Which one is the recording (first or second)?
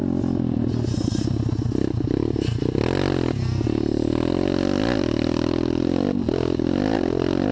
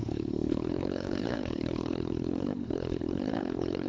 first